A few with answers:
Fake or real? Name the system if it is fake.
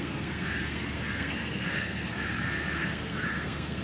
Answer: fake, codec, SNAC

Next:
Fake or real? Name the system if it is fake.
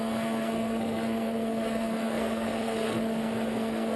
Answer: fake, codec, SNAC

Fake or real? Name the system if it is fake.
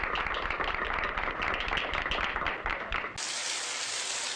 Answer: real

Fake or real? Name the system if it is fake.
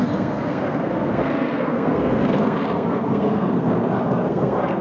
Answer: fake, codec, SNAC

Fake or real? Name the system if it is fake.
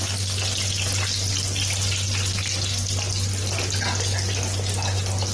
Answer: real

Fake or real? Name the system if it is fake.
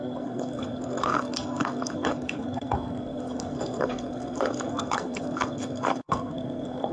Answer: fake, codec, SNAC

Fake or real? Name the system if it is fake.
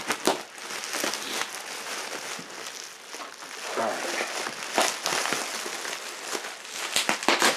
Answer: real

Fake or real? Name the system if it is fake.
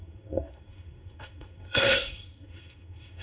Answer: fake, codec, SNAC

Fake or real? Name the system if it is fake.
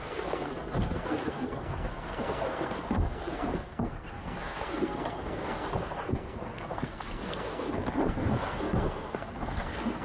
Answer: fake, codec, SNAC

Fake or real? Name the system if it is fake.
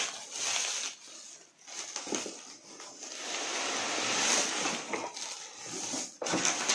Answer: real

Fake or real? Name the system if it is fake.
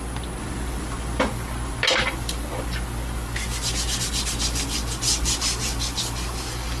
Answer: real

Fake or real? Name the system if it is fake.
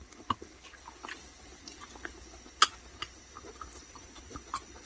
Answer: real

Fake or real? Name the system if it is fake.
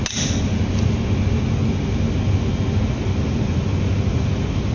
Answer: real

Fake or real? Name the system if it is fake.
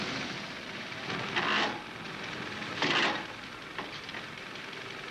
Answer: real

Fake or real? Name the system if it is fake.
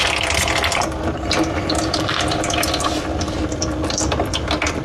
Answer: real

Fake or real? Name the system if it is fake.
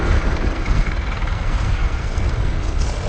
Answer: fake, codec, SNAC